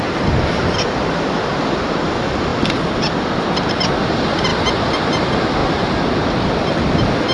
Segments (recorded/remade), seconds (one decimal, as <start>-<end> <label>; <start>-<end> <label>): 0.0-7.3 recorded